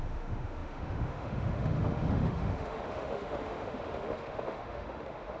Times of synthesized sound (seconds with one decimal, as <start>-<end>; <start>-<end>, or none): 0.0-5.4